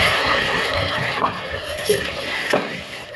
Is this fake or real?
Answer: fake